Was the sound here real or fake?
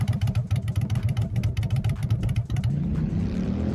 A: real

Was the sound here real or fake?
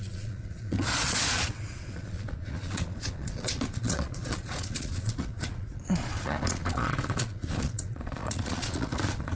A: fake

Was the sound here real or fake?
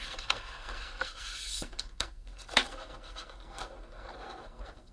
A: fake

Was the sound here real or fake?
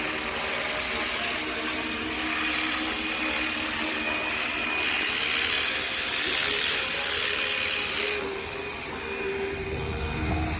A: real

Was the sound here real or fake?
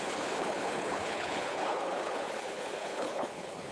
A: fake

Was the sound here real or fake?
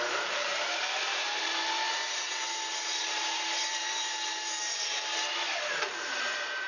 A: fake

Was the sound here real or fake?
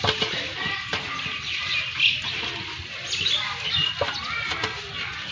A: real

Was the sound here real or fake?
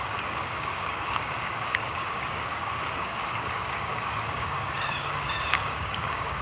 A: fake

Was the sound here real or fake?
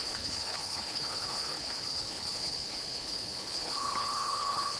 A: fake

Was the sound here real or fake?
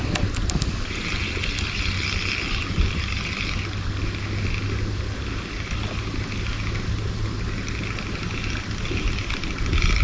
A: real